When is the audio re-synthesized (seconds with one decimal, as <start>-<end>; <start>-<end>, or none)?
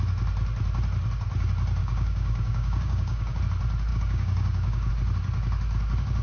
1.8-3.4; 3.9-4.9